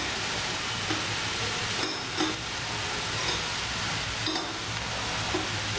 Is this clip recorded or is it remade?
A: recorded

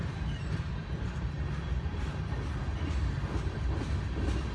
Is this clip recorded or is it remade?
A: recorded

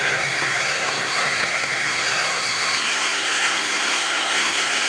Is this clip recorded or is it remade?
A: remade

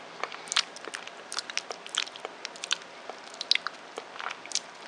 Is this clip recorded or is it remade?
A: recorded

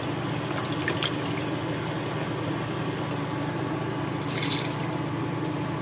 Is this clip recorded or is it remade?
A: recorded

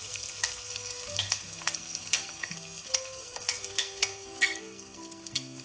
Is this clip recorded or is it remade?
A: remade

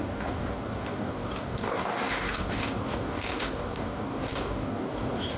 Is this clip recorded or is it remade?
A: remade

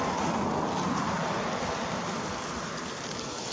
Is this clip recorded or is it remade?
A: recorded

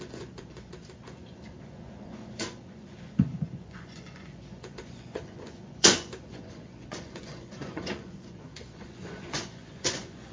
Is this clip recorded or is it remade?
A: remade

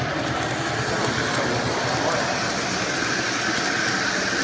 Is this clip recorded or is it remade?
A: recorded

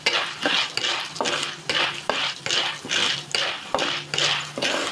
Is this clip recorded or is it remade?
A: recorded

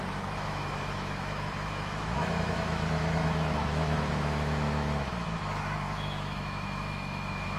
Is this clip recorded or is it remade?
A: remade